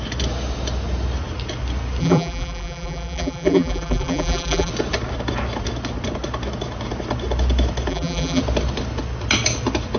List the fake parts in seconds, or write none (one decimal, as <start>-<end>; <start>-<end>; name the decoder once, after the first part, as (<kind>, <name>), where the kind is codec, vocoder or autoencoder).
2.0-4.7 (vocoder, BigVGAN v2); 7.9-8.4